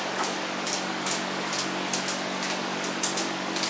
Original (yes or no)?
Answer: no